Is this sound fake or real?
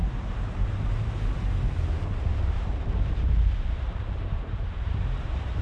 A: fake